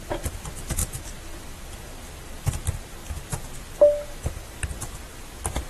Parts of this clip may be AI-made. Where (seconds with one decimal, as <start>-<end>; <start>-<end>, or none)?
none